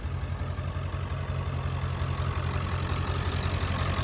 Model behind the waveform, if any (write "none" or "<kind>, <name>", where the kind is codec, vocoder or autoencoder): none